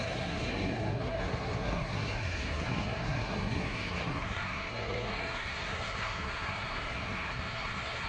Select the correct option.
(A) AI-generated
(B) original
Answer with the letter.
A